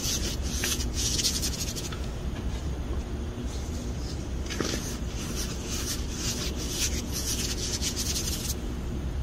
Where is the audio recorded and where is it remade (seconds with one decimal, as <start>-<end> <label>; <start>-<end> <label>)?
0.0-2.1 remade; 2.1-6.7 recorded; 6.7-8.0 remade; 8.0-9.2 recorded

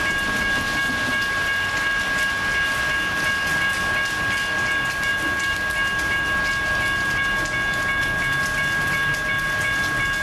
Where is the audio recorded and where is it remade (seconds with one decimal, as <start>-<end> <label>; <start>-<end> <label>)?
0.0-10.2 recorded

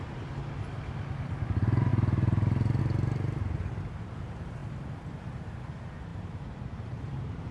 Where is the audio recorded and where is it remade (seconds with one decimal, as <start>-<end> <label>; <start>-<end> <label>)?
0.0-6.1 recorded; 6.1-7.5 remade

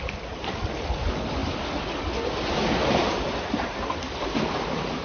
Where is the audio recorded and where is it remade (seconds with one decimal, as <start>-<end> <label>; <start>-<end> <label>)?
0.0-5.0 recorded

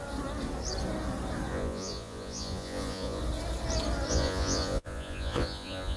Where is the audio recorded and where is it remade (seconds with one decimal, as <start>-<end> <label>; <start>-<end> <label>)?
0.0-1.5 recorded; 1.5-3.2 remade; 3.2-4.1 recorded; 4.1-6.0 remade

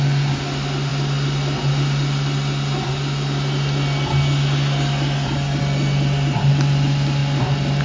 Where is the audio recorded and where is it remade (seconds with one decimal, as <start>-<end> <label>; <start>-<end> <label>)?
0.0-7.8 recorded

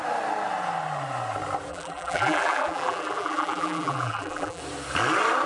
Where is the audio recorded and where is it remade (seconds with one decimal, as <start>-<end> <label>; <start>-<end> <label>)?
0.0-1.7 recorded; 1.7-4.6 remade; 4.6-5.5 recorded